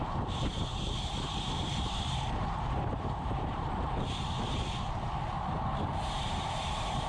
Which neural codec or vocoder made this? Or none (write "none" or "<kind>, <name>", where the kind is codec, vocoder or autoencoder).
vocoder, BigVGAN v2